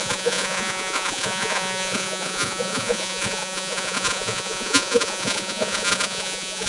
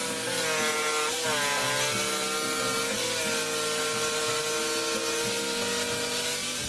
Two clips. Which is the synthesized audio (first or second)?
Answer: first